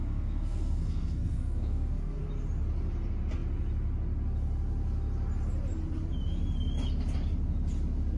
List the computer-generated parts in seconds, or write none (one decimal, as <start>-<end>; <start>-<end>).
0.0-2.2